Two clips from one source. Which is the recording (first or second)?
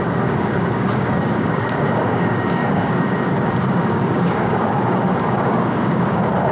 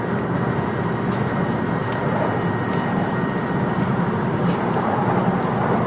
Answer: second